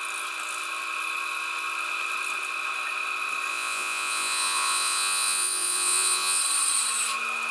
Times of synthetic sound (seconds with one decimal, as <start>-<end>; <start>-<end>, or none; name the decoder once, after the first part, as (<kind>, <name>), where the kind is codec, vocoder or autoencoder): 3.5-6.4 (vocoder, Vocos)